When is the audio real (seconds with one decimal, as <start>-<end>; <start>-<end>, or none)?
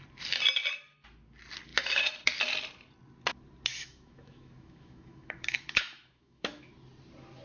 0.0-3.7; 6.7-7.4